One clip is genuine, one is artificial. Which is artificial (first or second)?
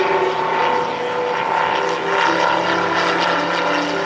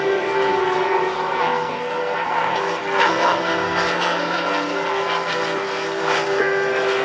second